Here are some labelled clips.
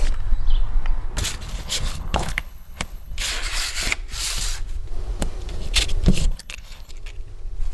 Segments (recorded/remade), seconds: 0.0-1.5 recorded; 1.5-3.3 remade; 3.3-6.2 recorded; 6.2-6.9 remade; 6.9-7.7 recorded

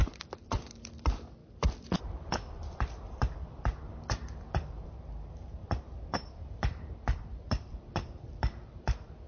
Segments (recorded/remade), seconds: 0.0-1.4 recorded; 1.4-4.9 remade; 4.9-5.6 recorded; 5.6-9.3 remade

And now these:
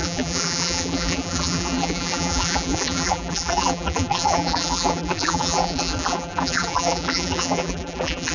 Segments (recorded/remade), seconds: 0.0-8.3 remade

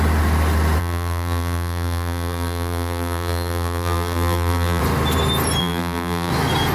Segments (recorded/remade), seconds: 0.0-0.8 recorded; 0.8-4.8 remade; 4.8-5.6 recorded; 5.6-6.3 remade; 6.3-6.7 recorded

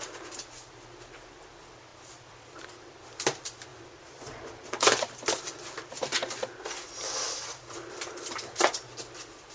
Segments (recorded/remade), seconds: 0.0-1.9 recorded; 1.9-3.0 remade; 3.0-3.7 recorded; 3.7-8.7 remade; 8.7-9.5 recorded